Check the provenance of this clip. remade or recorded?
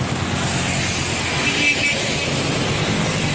recorded